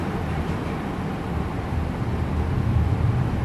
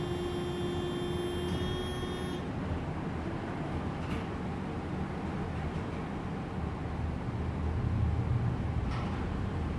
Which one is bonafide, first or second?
second